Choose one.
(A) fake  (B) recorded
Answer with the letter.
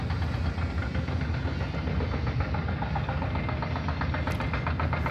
B